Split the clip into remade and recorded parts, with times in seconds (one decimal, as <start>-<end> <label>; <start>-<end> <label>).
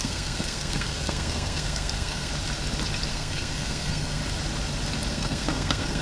0.0-2.3 remade; 2.3-3.1 recorded; 3.1-4.2 remade; 4.2-5.1 recorded; 5.1-6.0 remade